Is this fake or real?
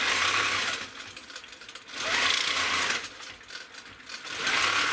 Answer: real